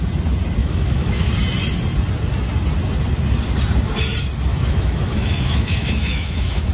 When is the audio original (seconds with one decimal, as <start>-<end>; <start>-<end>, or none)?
0.0-0.6; 1.3-4.5